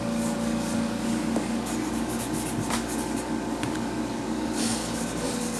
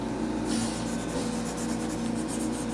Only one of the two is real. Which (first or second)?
second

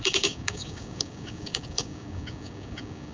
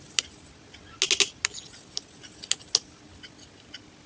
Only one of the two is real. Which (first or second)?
second